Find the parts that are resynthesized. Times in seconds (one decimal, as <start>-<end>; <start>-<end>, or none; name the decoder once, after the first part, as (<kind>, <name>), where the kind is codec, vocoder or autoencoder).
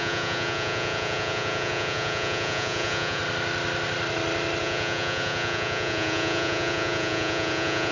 0.0-3.2 (vocoder, Vocos); 4.6-7.9